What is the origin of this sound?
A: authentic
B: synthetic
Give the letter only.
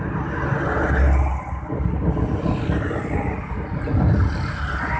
A